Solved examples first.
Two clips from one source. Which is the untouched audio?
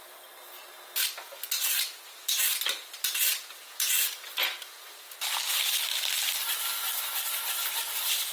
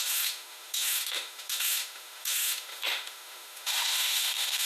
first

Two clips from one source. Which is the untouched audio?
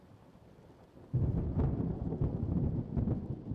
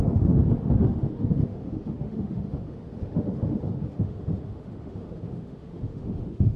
first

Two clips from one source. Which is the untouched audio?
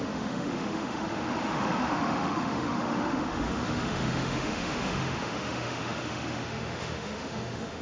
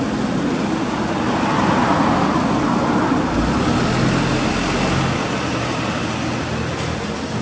second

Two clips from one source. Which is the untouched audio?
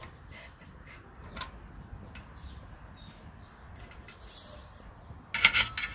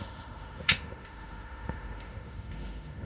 first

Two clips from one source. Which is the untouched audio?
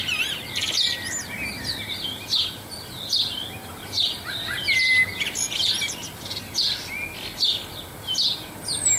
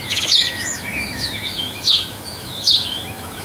first